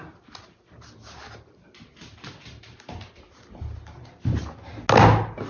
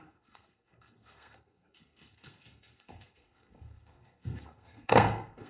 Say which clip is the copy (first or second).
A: second